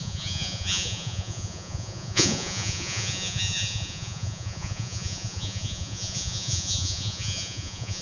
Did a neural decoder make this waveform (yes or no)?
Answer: yes